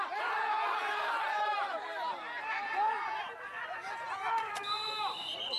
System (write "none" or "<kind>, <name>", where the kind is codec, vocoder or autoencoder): vocoder, BigVGAN v2